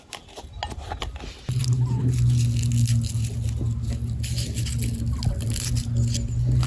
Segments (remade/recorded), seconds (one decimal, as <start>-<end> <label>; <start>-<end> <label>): 0.0-6.7 recorded